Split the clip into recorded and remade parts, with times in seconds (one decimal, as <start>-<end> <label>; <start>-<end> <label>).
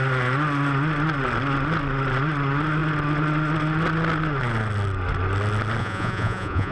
0.0-5.8 recorded; 5.8-6.7 remade